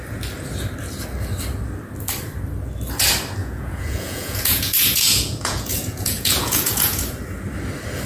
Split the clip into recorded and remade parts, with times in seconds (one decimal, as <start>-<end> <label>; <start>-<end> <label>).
0.0-3.4 recorded; 3.4-7.0 remade; 7.0-8.1 recorded